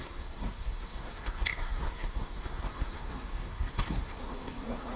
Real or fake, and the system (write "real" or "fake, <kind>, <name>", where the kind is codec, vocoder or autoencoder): fake, codec, SNAC